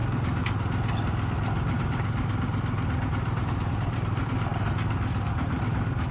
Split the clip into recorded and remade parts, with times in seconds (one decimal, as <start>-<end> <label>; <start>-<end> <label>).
0.0-3.7 recorded; 3.7-4.5 remade; 4.5-5.3 recorded; 5.3-6.1 remade